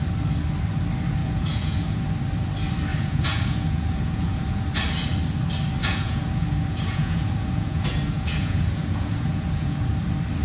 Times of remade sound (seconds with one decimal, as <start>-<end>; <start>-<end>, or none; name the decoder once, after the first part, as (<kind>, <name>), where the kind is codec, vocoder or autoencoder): 1.2-2.0 (vocoder, Vocos); 2.9-4.6; 5.8-9.9